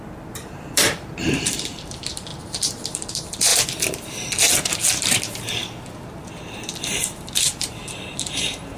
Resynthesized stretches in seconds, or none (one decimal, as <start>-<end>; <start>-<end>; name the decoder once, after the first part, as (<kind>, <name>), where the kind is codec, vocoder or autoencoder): 0.0-5.6 (vocoder, BigVGAN v2); 7.0-8.8